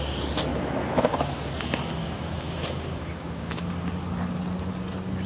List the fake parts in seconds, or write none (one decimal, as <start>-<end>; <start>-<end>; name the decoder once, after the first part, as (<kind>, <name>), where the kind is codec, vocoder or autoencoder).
0.5-1.1 (autoencoder, DAC-VAE); 2.0-3.7